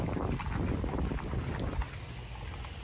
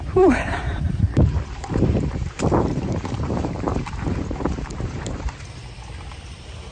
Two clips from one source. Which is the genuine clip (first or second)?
first